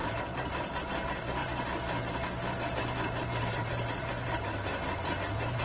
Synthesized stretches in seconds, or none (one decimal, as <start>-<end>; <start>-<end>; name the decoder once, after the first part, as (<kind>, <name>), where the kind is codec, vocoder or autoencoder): 0.8-1.4 (vocoder, BigVGAN v2); 2.6-5.6